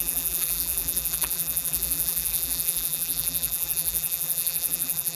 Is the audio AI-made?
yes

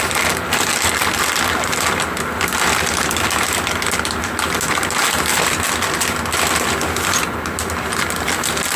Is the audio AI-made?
no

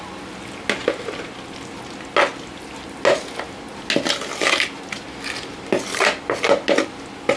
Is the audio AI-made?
no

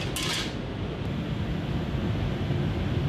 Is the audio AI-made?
no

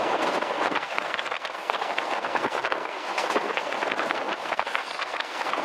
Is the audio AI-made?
yes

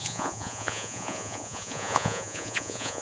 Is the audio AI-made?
yes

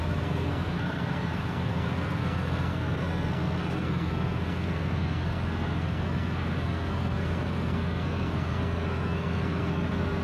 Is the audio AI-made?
yes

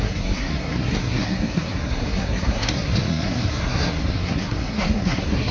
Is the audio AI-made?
yes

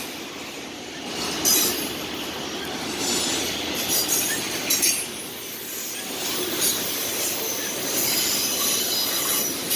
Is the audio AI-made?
no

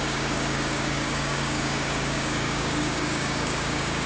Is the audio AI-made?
yes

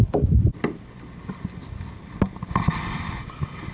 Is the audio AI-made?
no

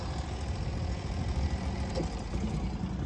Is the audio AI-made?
no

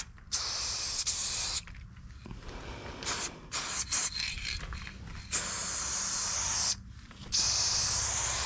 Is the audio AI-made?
no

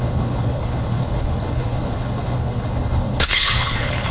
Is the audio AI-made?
yes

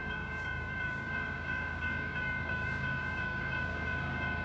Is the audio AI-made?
yes